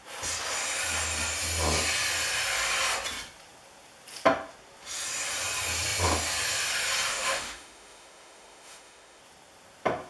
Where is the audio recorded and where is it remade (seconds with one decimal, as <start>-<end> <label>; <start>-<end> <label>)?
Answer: 0.0-7.1 recorded; 7.1-9.2 remade; 9.2-10.1 recorded